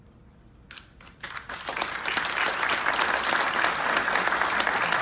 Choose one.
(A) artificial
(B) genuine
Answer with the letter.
B